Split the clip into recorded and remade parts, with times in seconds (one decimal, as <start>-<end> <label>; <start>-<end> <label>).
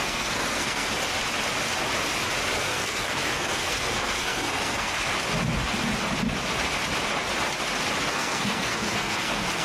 0.0-0.9 remade; 0.9-2.6 recorded; 2.6-5.1 remade; 5.1-8.0 recorded; 8.0-9.6 remade